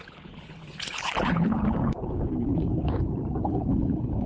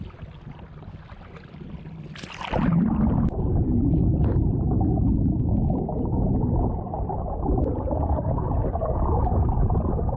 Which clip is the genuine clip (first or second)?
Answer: second